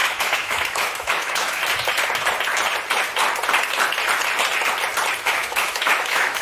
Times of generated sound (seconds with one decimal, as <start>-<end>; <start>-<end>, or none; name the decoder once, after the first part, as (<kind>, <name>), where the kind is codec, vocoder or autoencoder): 0.0-1.6 (autoencoder, DAC-VAE); 5.2-6.4